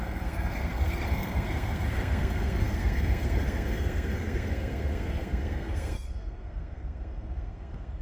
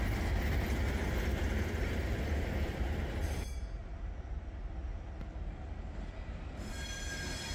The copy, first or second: first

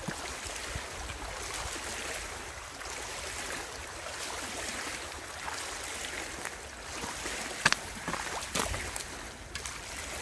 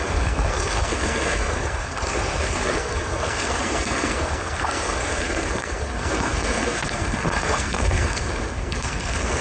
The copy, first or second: second